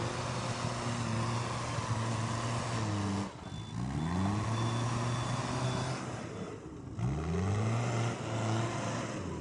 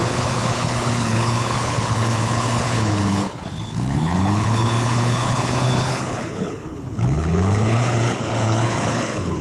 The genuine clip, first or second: first